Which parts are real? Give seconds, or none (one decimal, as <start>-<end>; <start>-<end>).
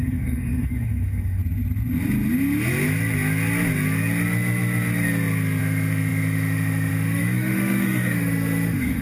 1.4-5.6